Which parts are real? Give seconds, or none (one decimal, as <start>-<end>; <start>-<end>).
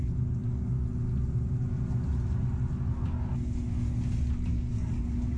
0.0-4.5; 5.0-5.4